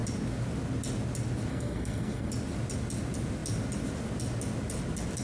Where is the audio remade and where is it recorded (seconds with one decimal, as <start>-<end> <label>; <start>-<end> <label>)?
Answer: 0.0-1.5 recorded; 1.5-2.3 remade; 2.3-5.2 recorded